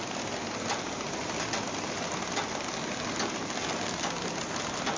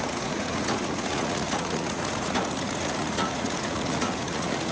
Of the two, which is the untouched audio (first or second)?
first